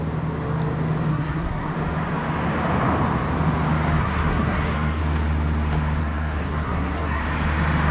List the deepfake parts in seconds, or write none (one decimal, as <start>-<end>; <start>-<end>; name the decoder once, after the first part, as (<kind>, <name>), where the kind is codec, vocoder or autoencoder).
1.1-1.7 (codec, SNAC); 4.0-5.0; 6.0-7.2